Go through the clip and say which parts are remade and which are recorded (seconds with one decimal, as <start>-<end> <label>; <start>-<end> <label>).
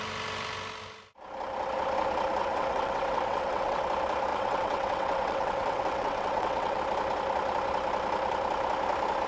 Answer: 0.0-2.4 recorded; 2.4-3.8 remade; 3.8-4.3 recorded; 4.3-6.8 remade; 6.8-9.3 recorded